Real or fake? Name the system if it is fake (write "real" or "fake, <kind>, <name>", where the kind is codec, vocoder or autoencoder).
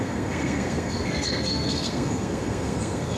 fake, codec, SNAC